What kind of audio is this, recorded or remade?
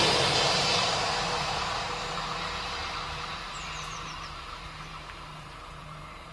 remade